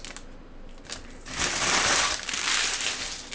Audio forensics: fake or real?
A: real